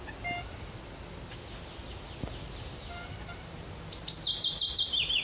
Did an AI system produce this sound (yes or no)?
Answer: no